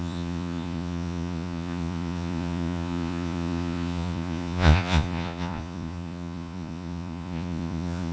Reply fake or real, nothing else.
fake